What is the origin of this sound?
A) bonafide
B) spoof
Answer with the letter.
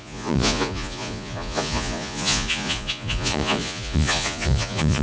B